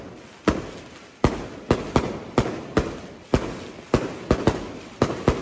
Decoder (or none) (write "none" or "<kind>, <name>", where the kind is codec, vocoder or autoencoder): none